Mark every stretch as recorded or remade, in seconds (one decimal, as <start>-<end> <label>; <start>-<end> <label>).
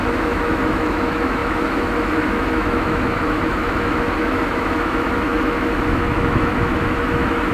0.0-7.5 remade